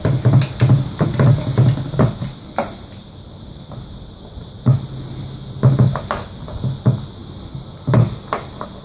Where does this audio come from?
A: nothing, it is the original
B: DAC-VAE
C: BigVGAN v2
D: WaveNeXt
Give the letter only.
A